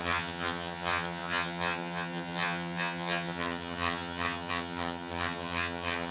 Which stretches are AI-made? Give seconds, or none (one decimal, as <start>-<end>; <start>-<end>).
0.0-6.1